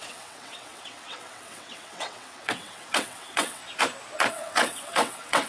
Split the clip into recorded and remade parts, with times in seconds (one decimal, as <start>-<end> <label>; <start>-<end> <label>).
0.0-3.6 remade; 3.6-4.3 recorded; 4.3-5.5 remade